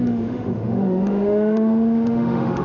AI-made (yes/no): yes